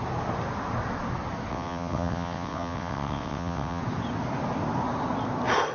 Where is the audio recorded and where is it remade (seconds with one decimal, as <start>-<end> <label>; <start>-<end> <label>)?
0.0-1.5 recorded; 1.5-3.8 remade; 3.8-5.7 recorded